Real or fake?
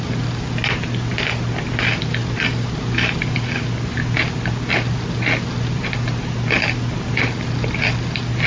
real